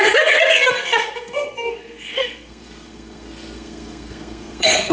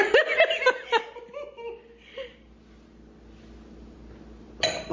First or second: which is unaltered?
second